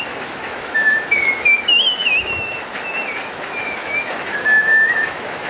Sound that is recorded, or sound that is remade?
remade